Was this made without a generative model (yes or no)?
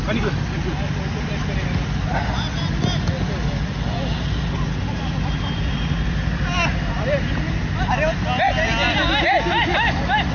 yes